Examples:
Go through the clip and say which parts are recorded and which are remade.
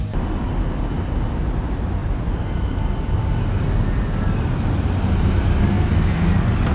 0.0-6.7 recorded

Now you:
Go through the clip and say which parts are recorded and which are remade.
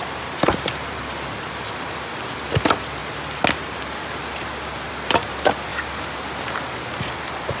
0.0-7.6 recorded